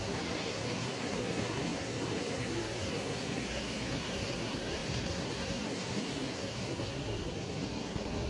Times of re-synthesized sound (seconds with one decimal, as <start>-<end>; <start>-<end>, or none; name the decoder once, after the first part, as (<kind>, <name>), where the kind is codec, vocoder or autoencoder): 0.0-8.3 (codec, SNAC)